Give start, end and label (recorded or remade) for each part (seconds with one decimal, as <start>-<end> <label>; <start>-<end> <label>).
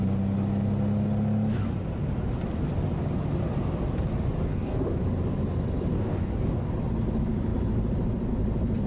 0.0-4.4 recorded; 4.4-5.0 remade; 5.0-5.9 recorded; 5.9-6.7 remade; 6.7-8.9 recorded